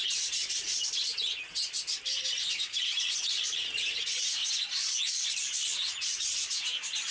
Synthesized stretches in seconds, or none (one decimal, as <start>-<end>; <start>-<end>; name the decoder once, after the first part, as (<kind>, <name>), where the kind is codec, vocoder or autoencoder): 0.0-1.1 (vocoder, BigVGAN v2); 2.0-4.4; 5.1-7.1